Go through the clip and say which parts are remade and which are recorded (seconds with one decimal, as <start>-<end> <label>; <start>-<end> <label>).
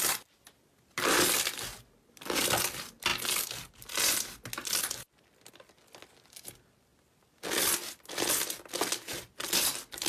0.0-10.1 recorded